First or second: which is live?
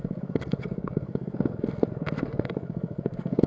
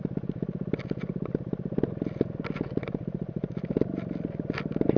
second